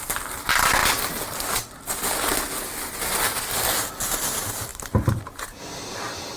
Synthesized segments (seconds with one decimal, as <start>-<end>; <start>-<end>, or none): none